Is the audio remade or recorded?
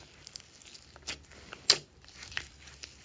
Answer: recorded